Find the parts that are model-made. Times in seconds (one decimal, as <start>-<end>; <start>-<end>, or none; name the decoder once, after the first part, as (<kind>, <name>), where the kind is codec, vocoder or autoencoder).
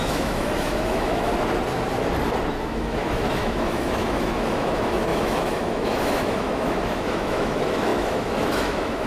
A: 0.0-1.3 (autoencoder, DAC-VAE); 2.6-9.1